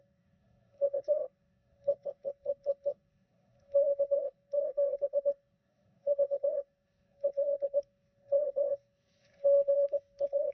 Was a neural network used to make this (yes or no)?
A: yes